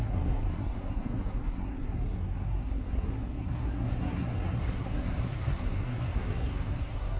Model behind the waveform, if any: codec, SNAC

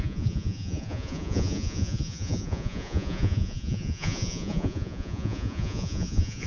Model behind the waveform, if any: vocoder, Vocos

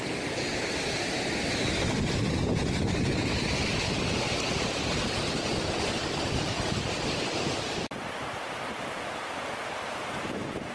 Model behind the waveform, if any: none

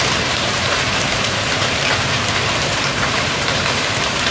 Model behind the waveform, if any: vocoder, BigVGAN v2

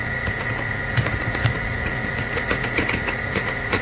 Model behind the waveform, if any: vocoder, Vocos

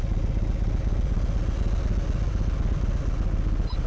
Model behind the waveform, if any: none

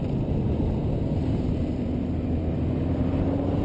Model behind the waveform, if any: none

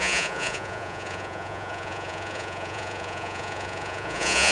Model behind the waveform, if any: vocoder, Vocos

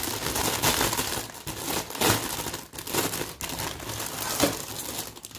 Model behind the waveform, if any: none